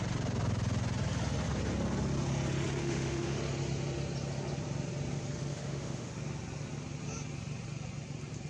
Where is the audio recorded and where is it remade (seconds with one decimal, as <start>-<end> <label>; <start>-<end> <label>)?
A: 0.0-2.8 recorded; 2.8-3.4 remade; 3.4-5.5 recorded; 5.5-6.1 remade; 6.1-8.5 recorded